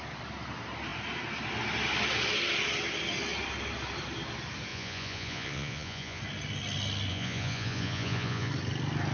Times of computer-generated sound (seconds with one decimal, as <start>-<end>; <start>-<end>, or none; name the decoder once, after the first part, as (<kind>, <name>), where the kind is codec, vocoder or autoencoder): 4.7-6.2 (vocoder, Vocos); 7.1-8.5